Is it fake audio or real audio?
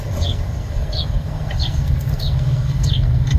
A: fake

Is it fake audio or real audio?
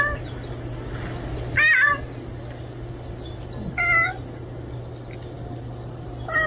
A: real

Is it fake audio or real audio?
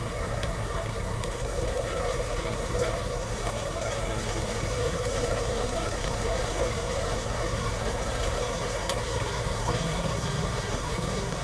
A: fake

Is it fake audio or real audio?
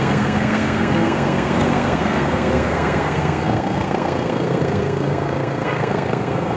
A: fake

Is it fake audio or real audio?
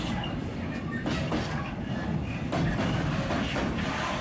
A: real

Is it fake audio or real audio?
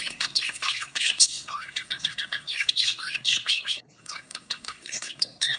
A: fake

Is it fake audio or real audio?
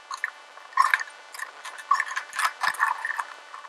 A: real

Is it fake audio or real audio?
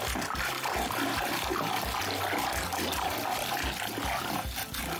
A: real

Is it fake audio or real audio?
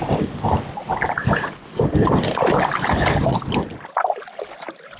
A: real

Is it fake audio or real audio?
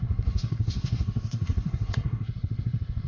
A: fake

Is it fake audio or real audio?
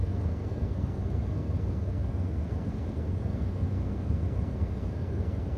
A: fake